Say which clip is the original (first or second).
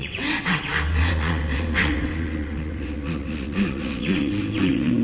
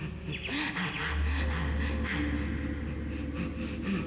second